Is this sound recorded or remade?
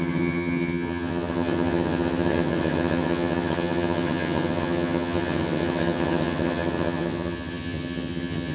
remade